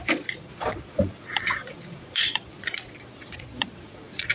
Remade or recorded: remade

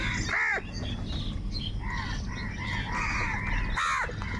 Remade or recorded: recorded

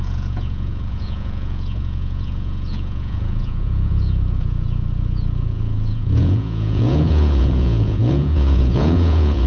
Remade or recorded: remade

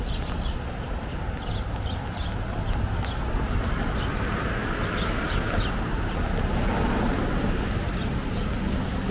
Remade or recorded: recorded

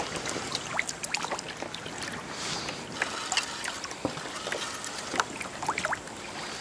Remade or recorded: recorded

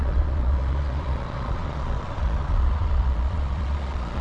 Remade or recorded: remade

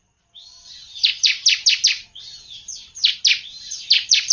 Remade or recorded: recorded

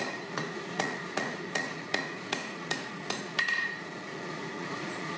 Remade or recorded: remade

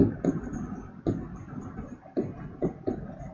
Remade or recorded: recorded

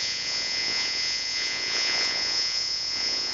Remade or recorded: remade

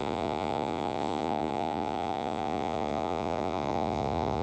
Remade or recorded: remade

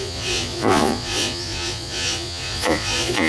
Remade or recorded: remade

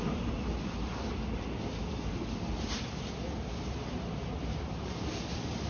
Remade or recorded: recorded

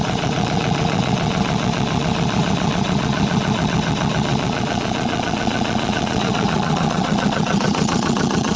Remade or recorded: remade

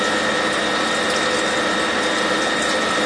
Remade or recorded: recorded